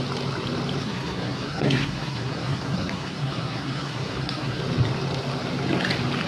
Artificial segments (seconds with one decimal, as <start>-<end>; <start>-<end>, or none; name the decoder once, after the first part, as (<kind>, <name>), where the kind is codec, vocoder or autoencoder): 0.8-4.6 (codec, SNAC)